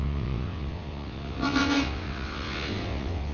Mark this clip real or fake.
fake